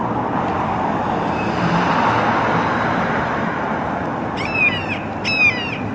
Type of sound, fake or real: real